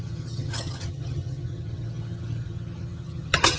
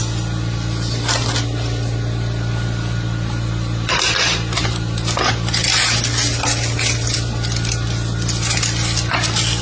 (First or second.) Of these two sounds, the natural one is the second